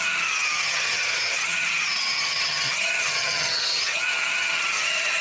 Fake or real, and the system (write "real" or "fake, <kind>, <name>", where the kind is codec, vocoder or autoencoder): fake, vocoder, HiFi-GAN